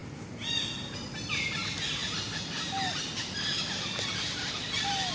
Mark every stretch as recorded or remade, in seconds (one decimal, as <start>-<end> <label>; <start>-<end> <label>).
0.0-5.1 recorded